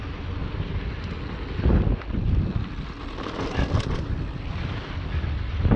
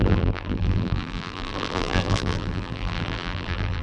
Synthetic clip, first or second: second